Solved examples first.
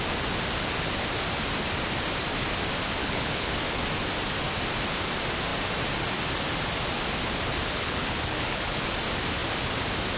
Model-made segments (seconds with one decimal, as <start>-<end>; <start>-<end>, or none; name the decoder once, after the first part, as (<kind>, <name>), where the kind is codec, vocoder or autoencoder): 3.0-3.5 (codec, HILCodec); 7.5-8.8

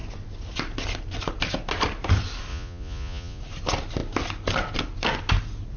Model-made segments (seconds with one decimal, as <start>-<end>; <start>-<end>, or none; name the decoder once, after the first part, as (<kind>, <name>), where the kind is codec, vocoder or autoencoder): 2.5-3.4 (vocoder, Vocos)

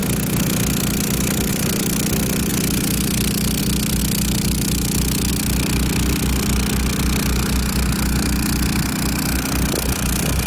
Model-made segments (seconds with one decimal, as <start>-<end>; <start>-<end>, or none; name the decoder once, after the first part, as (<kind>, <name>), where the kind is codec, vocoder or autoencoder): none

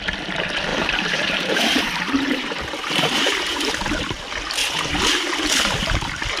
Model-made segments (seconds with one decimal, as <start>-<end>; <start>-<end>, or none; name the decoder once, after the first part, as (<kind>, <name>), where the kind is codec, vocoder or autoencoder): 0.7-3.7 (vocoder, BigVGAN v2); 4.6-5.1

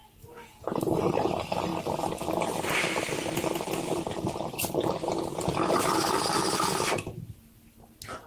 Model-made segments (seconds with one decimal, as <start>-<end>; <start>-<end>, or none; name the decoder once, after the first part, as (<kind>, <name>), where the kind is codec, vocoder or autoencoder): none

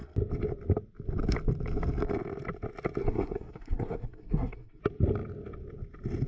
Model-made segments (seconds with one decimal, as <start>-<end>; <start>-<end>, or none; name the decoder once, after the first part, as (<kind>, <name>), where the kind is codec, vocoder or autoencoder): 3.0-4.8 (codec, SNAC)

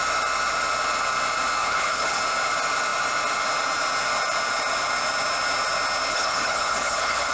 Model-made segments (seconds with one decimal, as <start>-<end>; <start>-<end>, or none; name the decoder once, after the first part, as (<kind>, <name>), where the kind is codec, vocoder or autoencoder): 1.6-2.2 (codec, HILCodec); 6.1-7.3

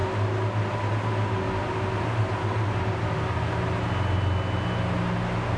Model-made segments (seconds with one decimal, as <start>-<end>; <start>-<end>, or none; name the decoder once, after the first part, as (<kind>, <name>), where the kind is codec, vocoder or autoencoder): none